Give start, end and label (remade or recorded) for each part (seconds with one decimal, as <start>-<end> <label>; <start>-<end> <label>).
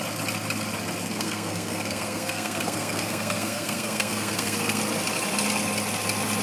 0.0-1.0 recorded; 1.0-4.8 remade; 4.8-6.4 recorded